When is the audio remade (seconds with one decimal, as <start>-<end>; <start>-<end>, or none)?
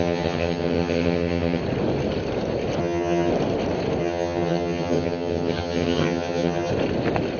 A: 0.0-1.6; 2.8-3.3; 4.0-6.7